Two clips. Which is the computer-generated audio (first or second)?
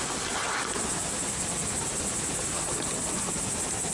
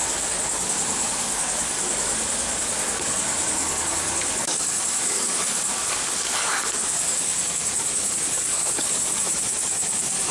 second